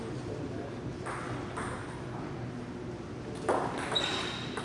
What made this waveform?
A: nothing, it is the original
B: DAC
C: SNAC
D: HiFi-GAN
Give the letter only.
A